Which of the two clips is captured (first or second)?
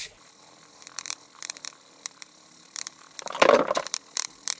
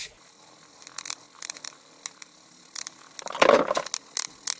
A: second